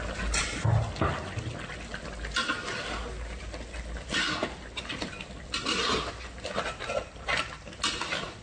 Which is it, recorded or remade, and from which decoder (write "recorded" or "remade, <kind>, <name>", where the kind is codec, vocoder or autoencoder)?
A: recorded